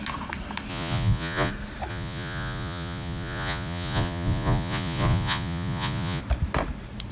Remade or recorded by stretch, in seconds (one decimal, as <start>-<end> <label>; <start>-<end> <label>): 0.0-0.7 recorded; 0.7-1.5 remade; 1.5-1.9 recorded; 1.9-6.2 remade; 6.2-7.1 recorded